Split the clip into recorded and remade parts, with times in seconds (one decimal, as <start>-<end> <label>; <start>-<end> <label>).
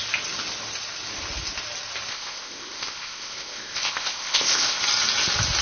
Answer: 0.0-2.1 recorded; 2.1-4.8 remade; 4.8-5.6 recorded